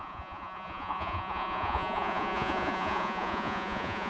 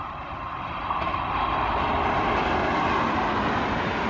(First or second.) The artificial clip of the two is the first